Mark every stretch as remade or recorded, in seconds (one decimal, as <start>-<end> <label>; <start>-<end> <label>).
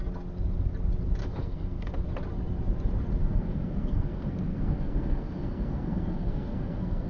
0.0-1.2 recorded; 1.2-1.9 remade; 1.9-3.2 recorded; 3.2-7.1 remade